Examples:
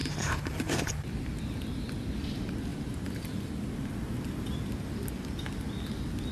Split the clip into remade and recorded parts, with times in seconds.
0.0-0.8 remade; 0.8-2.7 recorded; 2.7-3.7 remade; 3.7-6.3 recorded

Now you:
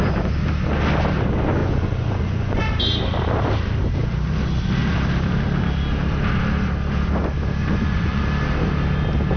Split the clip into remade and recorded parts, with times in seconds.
0.0-1.6 recorded; 1.6-2.6 remade; 2.6-7.6 recorded; 7.6-8.2 remade; 8.2-9.4 recorded

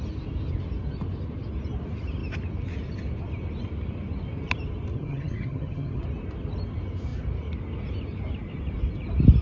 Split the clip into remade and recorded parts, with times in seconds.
0.0-4.9 recorded; 4.9-6.0 remade; 6.0-9.4 recorded

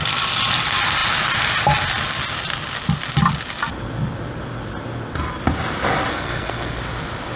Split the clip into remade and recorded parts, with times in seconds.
0.0-6.1 recorded; 6.1-6.8 remade; 6.8-7.4 recorded

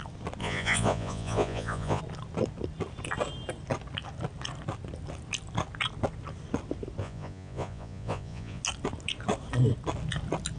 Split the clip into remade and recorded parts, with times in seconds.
0.0-0.4 recorded; 0.4-2.0 remade; 2.0-7.0 recorded; 7.0-8.6 remade; 8.6-10.6 recorded

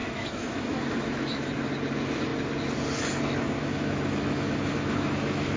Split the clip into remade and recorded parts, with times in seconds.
0.0-1.5 remade; 1.5-3.6 recorded; 3.6-5.6 remade